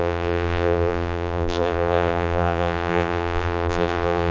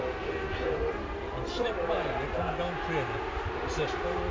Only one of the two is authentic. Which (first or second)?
second